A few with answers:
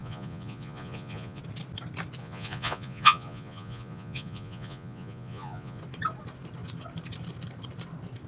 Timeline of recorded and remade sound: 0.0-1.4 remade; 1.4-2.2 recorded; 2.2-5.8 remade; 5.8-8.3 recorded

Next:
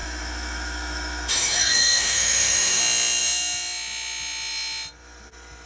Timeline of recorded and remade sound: 0.0-2.8 remade; 2.8-5.7 recorded

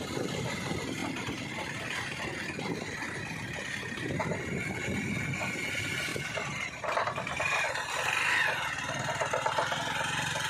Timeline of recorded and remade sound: 0.0-1.0 recorded; 1.0-3.9 remade; 3.9-6.1 recorded; 6.1-6.8 remade; 6.8-10.5 recorded

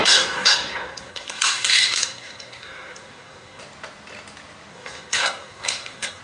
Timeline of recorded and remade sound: 0.0-3.6 remade; 3.6-4.7 recorded; 4.7-6.2 remade